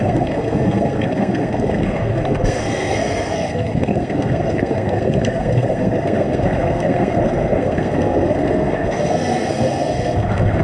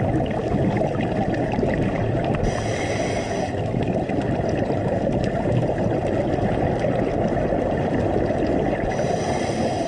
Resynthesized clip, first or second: first